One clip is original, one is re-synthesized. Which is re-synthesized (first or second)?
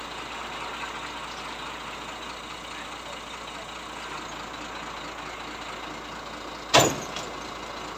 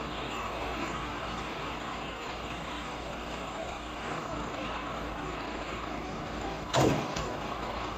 second